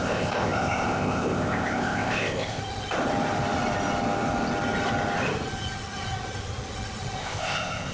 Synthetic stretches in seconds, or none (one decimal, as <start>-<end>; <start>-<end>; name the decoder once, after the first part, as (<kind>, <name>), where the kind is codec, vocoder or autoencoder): 0.0-2.6 (codec, ZipCodec); 7.2-7.9